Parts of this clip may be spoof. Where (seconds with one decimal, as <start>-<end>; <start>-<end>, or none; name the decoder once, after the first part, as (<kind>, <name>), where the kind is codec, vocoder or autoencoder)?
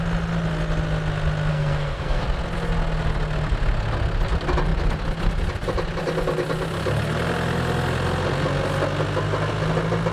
1.5-2.2 (codec, SNAC)